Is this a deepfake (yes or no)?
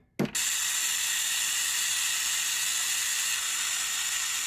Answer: no